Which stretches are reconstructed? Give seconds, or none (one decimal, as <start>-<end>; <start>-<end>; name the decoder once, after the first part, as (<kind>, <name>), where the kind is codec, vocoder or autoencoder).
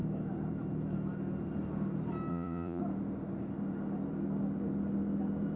2.3-2.8 (vocoder, Vocos)